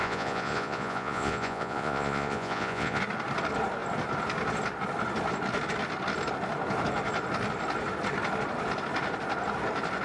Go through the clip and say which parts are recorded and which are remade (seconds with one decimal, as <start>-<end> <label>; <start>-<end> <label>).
0.0-3.0 remade; 3.0-10.0 recorded